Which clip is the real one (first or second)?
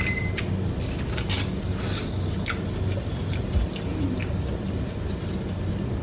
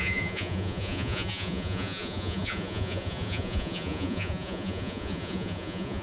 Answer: first